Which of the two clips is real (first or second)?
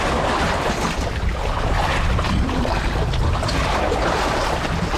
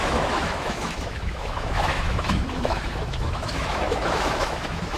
first